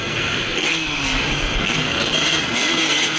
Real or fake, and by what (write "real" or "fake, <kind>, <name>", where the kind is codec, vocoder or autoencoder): fake, codec, SNAC